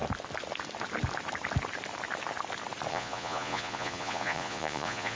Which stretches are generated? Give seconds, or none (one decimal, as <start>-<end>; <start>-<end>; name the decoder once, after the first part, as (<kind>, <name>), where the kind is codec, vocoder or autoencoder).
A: 2.9-5.2 (vocoder, Vocos)